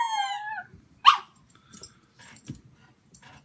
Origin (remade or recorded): recorded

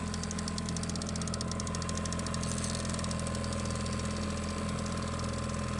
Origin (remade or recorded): recorded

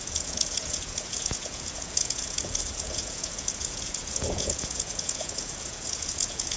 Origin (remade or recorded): remade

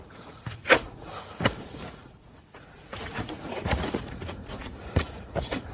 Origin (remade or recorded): remade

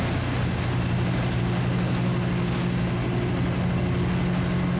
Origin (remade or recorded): recorded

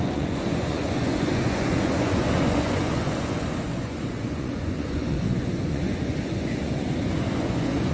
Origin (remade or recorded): remade